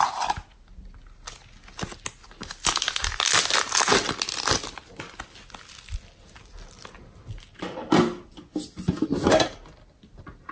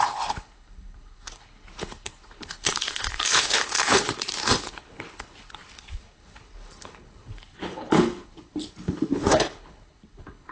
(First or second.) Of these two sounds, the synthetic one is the second